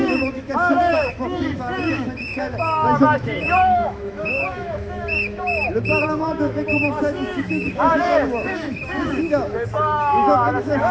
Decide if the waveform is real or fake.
fake